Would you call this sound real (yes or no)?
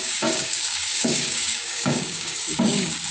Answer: no